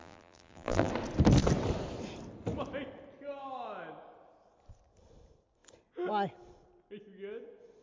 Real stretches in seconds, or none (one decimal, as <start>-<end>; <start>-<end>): 0.9-7.8